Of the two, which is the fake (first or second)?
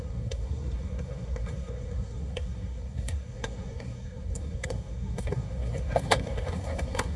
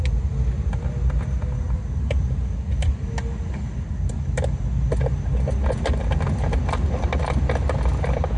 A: first